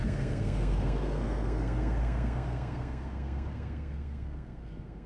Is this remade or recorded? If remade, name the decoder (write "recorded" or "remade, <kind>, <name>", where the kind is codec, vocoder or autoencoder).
remade, codec, SNAC